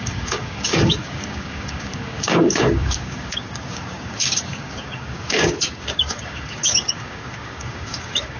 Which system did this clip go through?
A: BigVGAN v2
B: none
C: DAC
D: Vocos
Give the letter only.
C